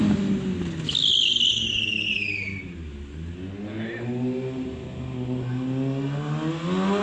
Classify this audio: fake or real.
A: real